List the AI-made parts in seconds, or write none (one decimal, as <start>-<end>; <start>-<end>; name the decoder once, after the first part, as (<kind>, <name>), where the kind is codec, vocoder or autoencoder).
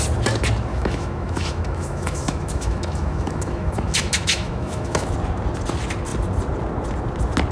0.7-5.1 (autoencoder, DAC-VAE)